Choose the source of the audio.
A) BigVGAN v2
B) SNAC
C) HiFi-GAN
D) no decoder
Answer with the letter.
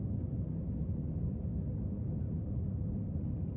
D